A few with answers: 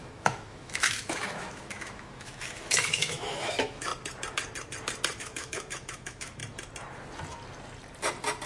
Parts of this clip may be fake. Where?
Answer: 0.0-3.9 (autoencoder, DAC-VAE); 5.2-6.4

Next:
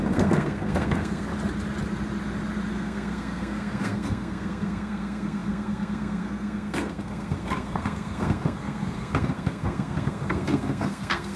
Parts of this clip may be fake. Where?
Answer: 0.0-1.3 (codec, SNAC); 2.7-11.4

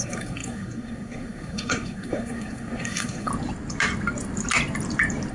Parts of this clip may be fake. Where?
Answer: 0.0-3.3 (codec, SNAC)